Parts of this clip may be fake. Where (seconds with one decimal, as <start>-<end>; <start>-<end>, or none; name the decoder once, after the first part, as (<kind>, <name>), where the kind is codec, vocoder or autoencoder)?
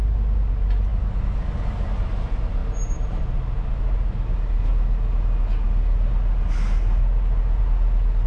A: none